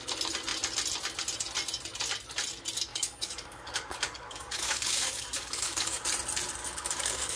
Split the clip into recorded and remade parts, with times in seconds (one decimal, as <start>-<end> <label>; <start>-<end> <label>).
0.0-2.9 recorded; 2.9-6.0 remade; 6.0-6.6 recorded; 6.6-7.4 remade